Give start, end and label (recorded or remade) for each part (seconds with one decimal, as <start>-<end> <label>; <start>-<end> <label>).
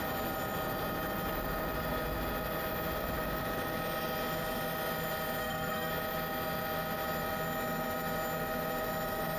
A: 0.0-5.4 recorded; 5.4-5.9 remade; 5.9-9.4 recorded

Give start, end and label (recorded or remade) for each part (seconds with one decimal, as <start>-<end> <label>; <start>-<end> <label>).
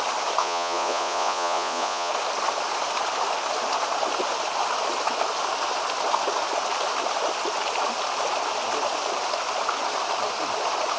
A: 0.0-0.4 recorded; 0.4-2.1 remade; 2.1-11.0 recorded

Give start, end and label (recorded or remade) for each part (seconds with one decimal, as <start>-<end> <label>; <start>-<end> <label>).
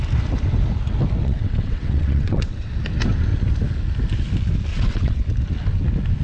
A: 0.0-1.2 recorded; 1.2-2.7 remade; 2.7-4.7 recorded; 4.7-5.2 remade; 5.2-6.2 recorded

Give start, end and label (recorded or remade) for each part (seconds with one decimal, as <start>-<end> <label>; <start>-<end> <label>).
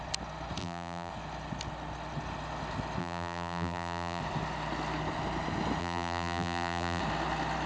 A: 0.0-0.6 recorded; 0.6-1.1 remade; 1.1-3.0 recorded; 3.0-4.2 remade; 4.2-5.8 recorded; 5.8-7.0 remade; 7.0-7.7 recorded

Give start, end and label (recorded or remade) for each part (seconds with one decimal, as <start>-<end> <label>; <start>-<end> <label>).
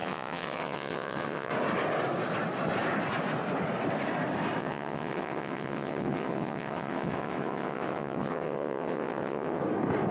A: 0.0-1.5 remade; 1.5-4.6 recorded; 4.6-9.6 remade; 9.6-10.1 recorded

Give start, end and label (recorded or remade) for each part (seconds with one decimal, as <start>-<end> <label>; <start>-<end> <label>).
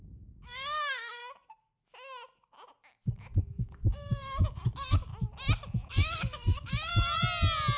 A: 0.0-1.2 remade; 1.2-3.4 recorded; 3.4-5.1 remade; 5.1-5.9 recorded; 5.9-6.9 remade; 6.9-7.8 recorded